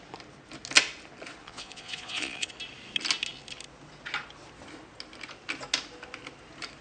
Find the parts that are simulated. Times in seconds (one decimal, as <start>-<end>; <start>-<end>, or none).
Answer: 1.4-2.5